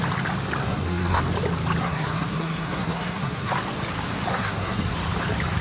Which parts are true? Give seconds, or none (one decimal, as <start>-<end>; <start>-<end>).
0.0-0.6; 1.2-1.8; 3.5-4.3; 4.9-5.6